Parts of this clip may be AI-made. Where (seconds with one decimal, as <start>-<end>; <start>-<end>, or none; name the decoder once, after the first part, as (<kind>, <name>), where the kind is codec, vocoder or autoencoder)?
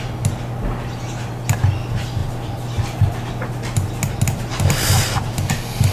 none